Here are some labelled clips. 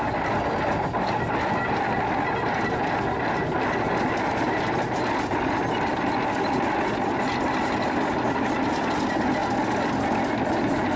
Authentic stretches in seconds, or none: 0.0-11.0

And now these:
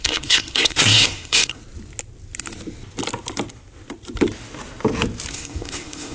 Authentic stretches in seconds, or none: 1.6-5.3

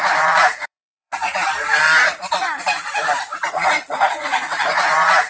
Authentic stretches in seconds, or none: 1.2-3.5

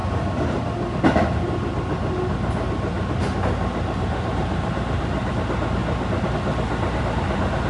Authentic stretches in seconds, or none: 0.6-3.7; 5.3-7.7

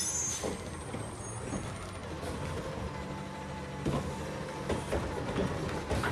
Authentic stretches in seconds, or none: 0.0-6.1